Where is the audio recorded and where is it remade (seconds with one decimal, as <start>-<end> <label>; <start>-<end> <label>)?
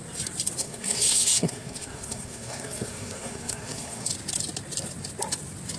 0.0-0.6 recorded; 0.6-4.1 remade; 4.1-5.8 recorded